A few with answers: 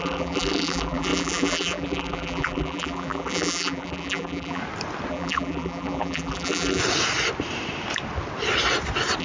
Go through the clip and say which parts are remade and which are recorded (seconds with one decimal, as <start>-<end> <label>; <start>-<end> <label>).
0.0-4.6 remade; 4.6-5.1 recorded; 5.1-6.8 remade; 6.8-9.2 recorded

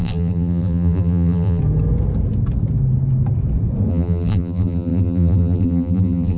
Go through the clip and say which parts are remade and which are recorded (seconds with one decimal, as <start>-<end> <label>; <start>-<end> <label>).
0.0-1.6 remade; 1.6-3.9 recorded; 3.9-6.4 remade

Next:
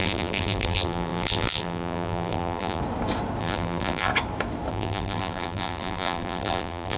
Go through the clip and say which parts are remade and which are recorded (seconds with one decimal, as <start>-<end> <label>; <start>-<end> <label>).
0.0-2.8 remade; 2.8-3.4 recorded; 3.4-4.1 remade; 4.1-4.7 recorded; 4.7-7.0 remade